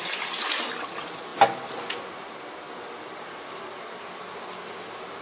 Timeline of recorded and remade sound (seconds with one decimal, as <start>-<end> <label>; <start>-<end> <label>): 0.0-5.2 recorded